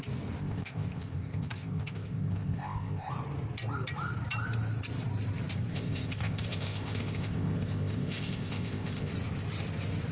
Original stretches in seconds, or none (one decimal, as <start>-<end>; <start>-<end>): 0.0-0.4; 3.1-5.7; 9.1-10.1